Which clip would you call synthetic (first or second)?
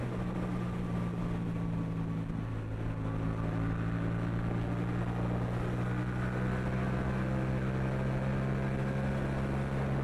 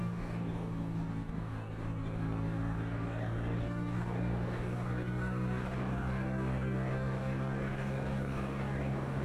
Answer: second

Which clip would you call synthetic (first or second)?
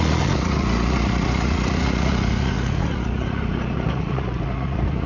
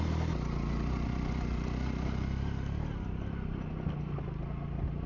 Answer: first